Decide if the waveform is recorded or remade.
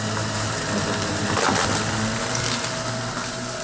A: recorded